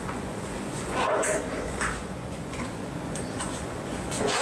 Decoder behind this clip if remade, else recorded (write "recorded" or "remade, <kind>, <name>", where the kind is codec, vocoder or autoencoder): remade, vocoder, Vocos